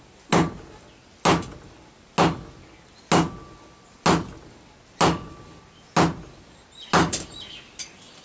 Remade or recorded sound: recorded